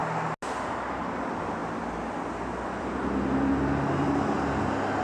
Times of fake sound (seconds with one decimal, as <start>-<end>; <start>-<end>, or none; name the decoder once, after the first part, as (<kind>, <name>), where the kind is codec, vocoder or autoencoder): none